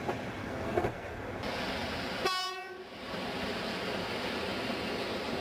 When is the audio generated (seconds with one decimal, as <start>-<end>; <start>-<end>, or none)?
0.4-1.4